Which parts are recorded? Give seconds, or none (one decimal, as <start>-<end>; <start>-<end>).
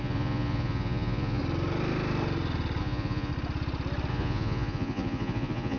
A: 1.4-2.8; 3.3-4.1